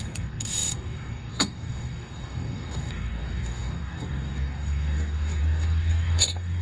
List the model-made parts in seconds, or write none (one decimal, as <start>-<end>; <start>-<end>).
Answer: 0.0-6.6